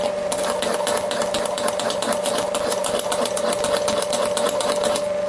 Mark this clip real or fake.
real